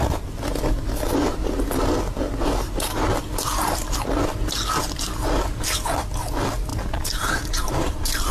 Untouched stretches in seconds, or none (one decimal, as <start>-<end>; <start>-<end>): 0.0-6.7